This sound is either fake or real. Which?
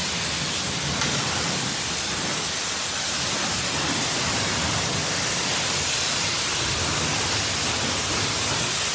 real